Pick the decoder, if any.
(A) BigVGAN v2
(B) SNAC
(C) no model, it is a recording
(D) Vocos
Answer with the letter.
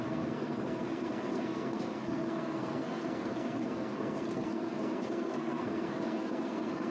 B